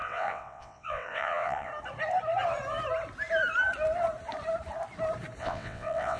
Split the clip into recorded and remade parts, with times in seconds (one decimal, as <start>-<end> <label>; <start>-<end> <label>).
0.0-1.7 remade; 1.7-5.4 recorded; 5.4-6.2 remade

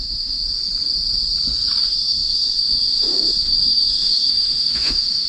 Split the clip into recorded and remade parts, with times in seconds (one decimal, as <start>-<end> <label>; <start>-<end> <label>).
0.0-0.4 remade; 0.4-1.8 recorded; 1.8-5.3 remade

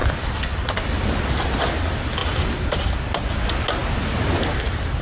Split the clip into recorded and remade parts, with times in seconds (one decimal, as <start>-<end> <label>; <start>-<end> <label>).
0.0-5.0 recorded

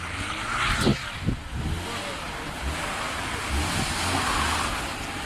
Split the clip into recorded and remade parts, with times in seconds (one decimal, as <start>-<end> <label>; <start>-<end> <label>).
0.0-5.3 recorded

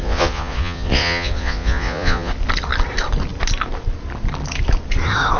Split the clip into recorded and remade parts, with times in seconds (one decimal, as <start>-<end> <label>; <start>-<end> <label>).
0.0-2.3 remade; 2.3-5.4 recorded

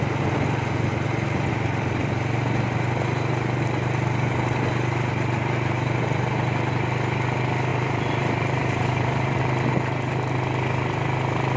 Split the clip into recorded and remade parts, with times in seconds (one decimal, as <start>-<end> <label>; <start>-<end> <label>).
0.0-7.7 recorded; 7.7-9.4 remade; 9.4-11.6 recorded